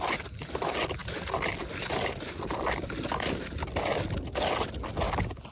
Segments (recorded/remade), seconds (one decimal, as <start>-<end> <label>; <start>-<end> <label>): 0.0-5.5 recorded